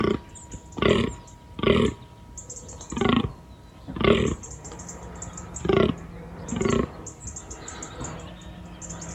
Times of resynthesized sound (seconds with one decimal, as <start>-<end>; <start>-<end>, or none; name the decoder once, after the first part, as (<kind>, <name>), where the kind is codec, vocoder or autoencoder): none